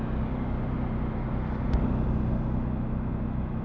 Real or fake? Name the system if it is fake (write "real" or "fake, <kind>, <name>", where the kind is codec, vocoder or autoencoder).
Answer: real